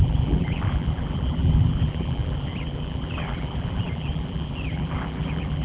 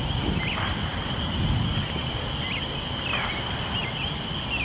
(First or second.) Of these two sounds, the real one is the second